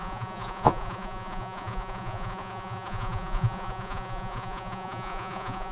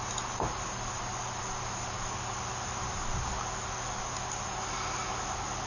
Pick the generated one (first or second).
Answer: first